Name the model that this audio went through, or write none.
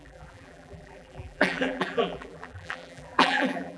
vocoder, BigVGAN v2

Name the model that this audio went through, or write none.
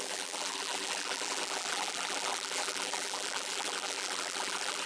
vocoder, BigVGAN v2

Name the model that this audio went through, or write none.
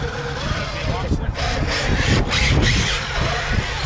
none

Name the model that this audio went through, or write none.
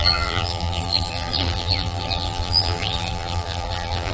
vocoder, BigVGAN v2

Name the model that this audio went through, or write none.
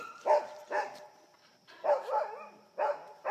none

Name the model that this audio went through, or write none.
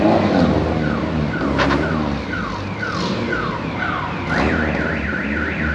none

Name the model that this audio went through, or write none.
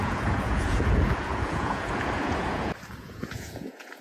vocoder, Vocos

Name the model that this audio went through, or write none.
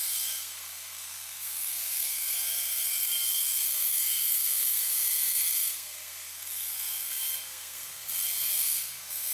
codec, SNAC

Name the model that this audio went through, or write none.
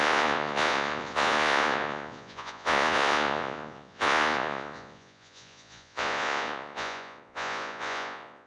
vocoder, Vocos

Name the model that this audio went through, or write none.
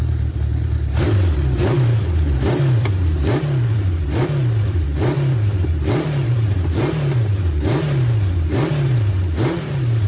vocoder, BigVGAN v2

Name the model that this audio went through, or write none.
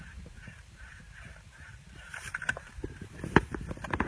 vocoder, BigVGAN v2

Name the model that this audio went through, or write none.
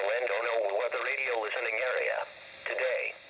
none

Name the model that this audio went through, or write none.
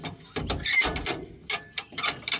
none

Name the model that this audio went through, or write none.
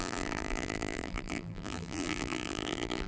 vocoder, BigVGAN v2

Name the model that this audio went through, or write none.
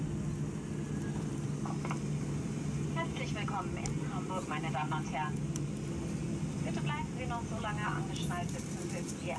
none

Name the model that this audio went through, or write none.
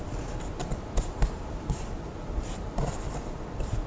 vocoder, BigVGAN v2